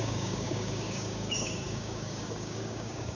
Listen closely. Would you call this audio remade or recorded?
remade